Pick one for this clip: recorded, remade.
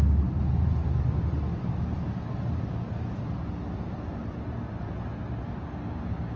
recorded